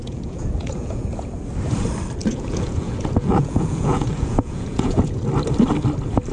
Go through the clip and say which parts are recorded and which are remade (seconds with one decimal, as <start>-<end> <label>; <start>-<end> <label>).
0.0-1.4 remade; 1.4-2.2 recorded; 2.2-5.2 remade; 5.2-6.3 recorded